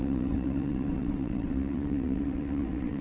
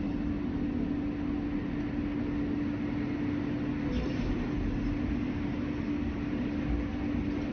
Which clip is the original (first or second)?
second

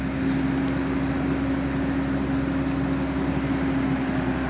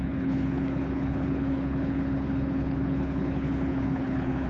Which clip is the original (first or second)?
first